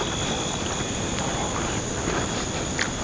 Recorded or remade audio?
recorded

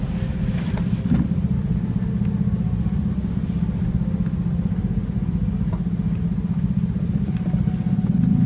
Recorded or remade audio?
recorded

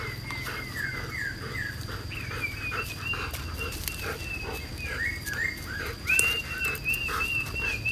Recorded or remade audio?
recorded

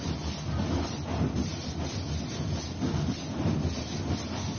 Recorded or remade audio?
recorded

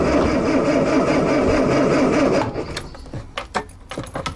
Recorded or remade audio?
recorded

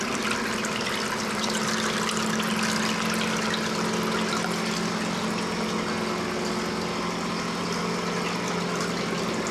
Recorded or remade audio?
recorded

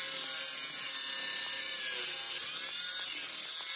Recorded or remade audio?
recorded